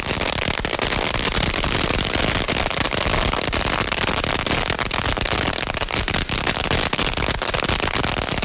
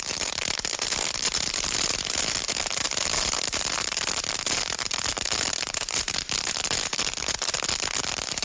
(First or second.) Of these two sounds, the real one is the first